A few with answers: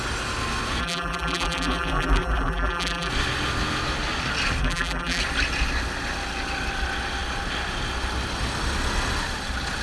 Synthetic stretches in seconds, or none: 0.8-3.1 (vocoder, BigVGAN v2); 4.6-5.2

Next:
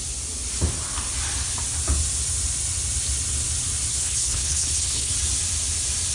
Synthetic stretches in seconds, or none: 3.9-5.1 (codec, HILCodec)

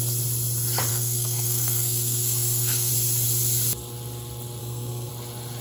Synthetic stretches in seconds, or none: 0.9-2.9 (codec, SNAC); 4.6-5.1

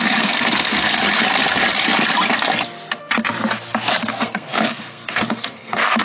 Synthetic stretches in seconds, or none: 0.0-0.9 (codec, SNAC); 4.1-6.0